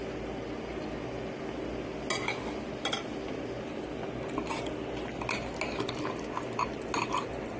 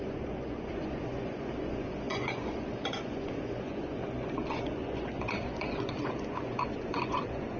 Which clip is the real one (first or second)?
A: first